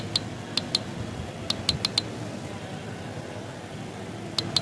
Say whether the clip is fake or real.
real